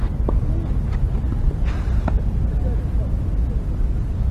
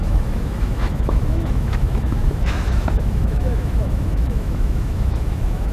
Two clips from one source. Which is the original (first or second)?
first